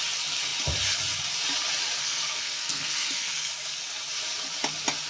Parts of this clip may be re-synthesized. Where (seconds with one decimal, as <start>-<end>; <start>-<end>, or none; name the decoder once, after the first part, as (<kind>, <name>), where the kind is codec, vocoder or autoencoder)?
2.0-3.5 (codec, SNAC)